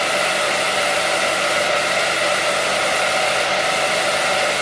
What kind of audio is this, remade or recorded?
recorded